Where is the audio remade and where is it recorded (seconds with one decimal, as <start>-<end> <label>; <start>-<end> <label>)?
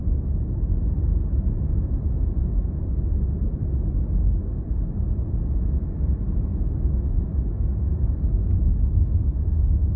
0.0-6.5 recorded; 6.5-8.2 remade; 8.2-10.0 recorded